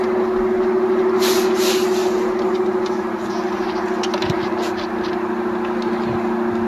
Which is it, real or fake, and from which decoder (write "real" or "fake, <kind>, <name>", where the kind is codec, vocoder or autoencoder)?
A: real